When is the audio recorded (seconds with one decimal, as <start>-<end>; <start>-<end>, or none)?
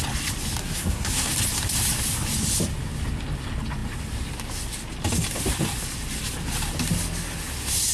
0.0-0.6; 1.3-7.9